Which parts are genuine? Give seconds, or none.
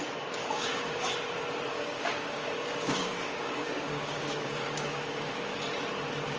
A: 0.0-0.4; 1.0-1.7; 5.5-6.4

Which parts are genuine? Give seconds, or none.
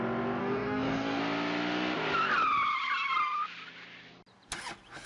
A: 0.0-0.4; 1.2-5.1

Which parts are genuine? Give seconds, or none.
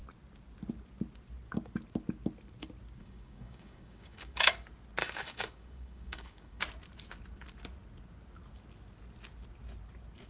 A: 0.0-3.0; 4.5-5.0; 6.6-10.3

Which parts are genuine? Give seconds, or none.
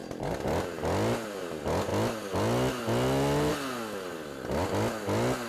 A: 0.0-5.5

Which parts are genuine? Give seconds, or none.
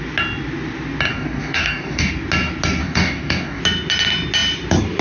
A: 0.0-1.1; 2.1-2.8; 3.6-5.0